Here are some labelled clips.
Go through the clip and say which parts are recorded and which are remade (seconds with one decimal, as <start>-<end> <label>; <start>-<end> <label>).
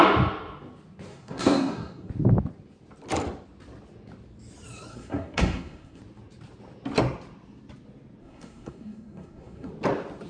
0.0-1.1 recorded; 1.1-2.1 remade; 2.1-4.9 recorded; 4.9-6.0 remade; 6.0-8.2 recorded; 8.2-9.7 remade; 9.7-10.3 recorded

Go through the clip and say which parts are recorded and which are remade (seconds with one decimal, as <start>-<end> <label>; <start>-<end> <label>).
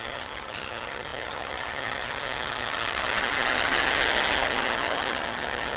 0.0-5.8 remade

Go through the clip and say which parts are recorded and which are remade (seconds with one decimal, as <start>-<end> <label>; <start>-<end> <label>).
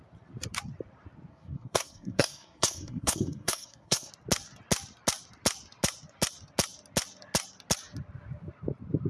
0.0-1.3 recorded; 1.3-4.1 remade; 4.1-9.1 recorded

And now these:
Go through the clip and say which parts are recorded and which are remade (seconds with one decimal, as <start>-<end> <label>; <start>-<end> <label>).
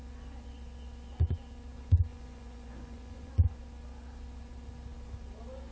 0.0-2.1 recorded; 2.1-3.3 remade; 3.3-5.7 recorded